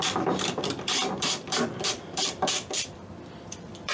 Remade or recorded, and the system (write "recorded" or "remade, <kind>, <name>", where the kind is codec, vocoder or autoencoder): remade, vocoder, BigVGAN v2